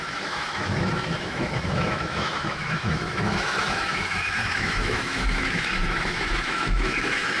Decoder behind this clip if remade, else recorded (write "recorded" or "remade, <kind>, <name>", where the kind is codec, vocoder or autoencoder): remade, autoencoder, DAC-VAE